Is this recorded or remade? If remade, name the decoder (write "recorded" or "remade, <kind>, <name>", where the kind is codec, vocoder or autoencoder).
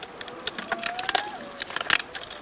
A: recorded